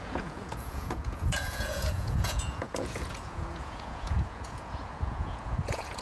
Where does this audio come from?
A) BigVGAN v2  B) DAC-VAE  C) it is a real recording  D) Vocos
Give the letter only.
D